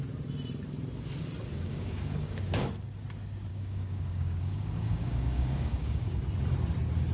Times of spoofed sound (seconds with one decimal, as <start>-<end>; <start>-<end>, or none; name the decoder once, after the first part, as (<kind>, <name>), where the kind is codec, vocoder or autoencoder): 1.5-2.7 (codec, DAC); 3.5-6.2